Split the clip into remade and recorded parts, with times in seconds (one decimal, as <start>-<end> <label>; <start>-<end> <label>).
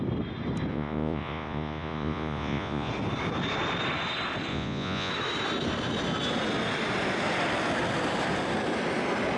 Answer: 0.0-0.7 recorded; 0.7-2.9 remade; 2.9-4.5 recorded; 4.5-5.1 remade; 5.1-9.4 recorded